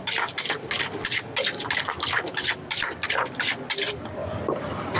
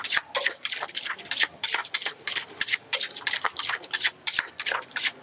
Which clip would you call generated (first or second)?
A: second